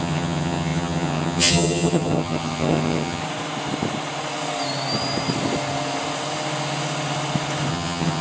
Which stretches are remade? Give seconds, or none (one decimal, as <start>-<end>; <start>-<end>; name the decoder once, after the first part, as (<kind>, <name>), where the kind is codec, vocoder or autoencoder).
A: 0.0-3.2 (vocoder, HiFi-GAN); 7.7-8.2